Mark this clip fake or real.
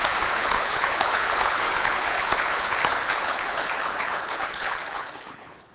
fake